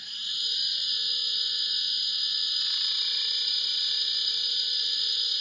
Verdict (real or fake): fake